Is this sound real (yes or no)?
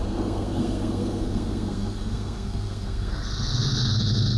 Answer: no